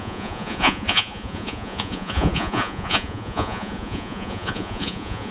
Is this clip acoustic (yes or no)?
no